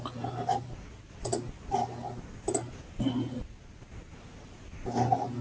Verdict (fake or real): real